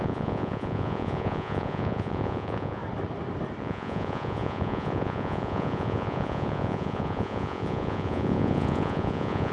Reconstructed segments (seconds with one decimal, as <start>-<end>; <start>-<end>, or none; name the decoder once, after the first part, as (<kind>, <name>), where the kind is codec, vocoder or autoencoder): 0.0-2.8 (vocoder, Vocos); 3.6-9.5